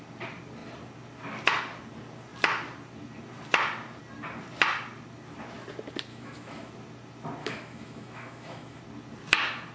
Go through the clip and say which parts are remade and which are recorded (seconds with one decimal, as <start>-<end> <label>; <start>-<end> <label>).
0.0-6.1 recorded; 6.1-6.7 remade; 6.7-7.4 recorded; 7.4-8.8 remade; 8.8-9.7 recorded